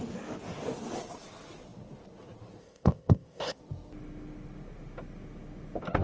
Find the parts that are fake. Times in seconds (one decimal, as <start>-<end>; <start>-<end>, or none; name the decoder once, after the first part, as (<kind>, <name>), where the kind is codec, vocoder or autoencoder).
2.6-3.6 (codec, ZipCodec)